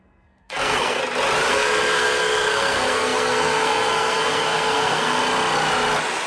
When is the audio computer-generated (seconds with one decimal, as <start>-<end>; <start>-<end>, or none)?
0.0-1.0; 1.5-5.2